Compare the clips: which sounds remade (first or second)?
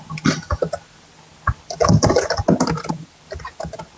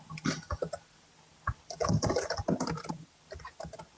second